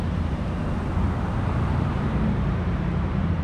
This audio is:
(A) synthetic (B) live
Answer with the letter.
A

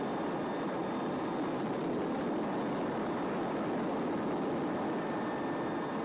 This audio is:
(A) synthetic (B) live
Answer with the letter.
B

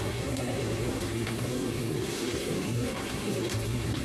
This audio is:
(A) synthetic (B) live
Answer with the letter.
A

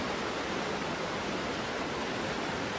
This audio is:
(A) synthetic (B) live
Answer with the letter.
B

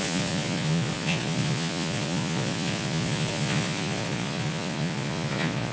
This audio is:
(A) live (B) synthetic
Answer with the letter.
B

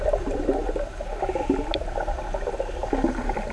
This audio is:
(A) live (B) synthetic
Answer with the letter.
A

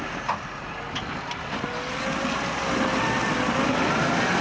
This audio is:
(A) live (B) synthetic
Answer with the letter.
A